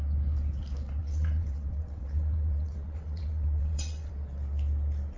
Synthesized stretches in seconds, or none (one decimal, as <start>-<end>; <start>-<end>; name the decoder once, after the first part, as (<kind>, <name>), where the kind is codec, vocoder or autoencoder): 1.0-4.1 (vocoder, WaveNeXt)